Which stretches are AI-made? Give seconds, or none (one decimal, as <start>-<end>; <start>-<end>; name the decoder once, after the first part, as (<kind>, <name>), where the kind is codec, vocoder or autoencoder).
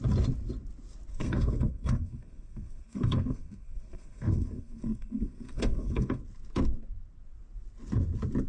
1.1-6.2 (codec, SNAC)